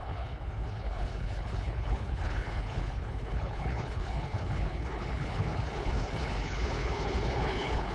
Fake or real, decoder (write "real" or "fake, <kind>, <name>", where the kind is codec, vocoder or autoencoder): fake, codec, HILCodec